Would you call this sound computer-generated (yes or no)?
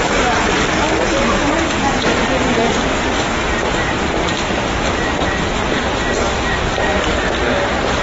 no